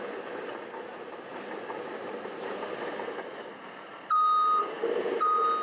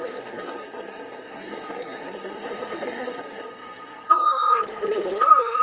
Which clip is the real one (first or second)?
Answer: first